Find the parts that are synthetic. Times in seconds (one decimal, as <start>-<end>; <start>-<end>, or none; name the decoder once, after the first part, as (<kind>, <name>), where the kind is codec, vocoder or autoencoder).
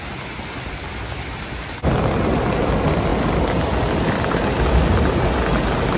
none